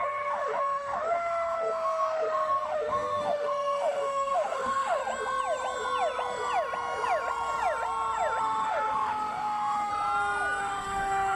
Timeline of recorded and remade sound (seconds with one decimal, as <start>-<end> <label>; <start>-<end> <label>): 0.0-5.0 remade; 5.0-8.4 recorded; 8.4-9.9 remade; 9.9-10.6 recorded; 10.6-11.4 remade